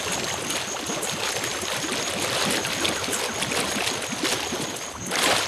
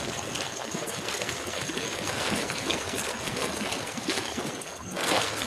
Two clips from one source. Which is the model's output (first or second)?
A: second